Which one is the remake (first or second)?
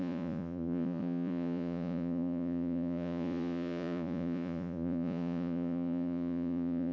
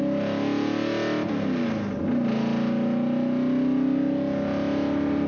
first